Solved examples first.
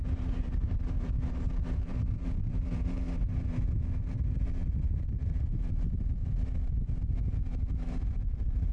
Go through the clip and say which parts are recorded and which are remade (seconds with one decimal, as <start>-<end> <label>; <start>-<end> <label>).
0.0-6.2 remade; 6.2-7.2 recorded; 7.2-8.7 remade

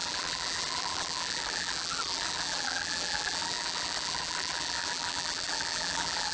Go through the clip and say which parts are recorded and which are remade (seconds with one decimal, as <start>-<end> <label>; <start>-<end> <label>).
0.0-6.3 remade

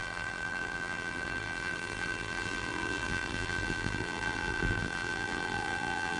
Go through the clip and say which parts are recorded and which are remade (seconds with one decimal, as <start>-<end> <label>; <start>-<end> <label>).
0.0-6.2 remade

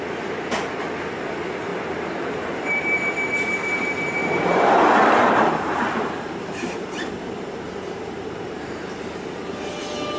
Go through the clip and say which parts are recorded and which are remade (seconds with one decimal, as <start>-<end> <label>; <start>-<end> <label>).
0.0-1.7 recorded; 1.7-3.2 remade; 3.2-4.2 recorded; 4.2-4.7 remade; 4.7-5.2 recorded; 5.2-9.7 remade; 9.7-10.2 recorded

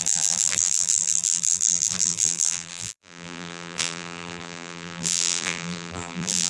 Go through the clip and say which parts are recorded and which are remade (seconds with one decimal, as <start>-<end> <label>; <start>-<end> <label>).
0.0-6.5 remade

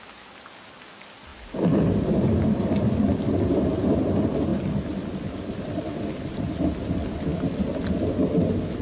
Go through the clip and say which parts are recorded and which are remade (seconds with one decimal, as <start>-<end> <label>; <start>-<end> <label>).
0.0-4.5 recorded; 4.5-5.7 remade; 5.7-8.8 recorded